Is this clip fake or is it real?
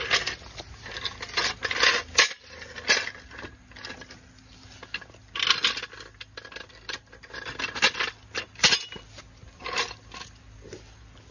real